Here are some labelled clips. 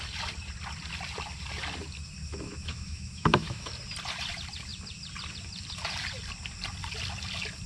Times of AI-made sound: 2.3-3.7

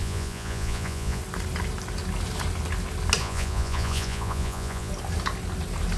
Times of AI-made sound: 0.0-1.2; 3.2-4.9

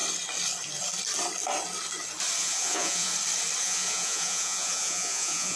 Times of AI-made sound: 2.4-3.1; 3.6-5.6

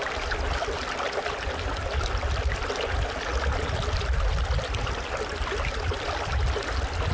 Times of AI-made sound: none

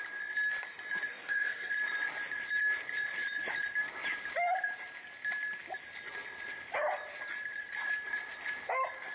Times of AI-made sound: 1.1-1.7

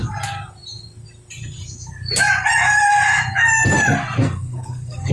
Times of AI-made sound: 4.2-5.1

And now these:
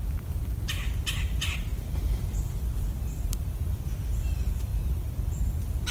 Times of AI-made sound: 0.0-1.7; 2.4-4.7

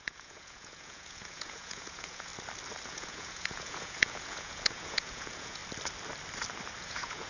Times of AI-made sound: 0.0-2.3; 2.9-5.6; 6.8-7.3